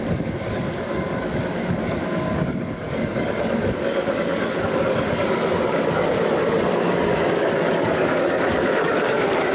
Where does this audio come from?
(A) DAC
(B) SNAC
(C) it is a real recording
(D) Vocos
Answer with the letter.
A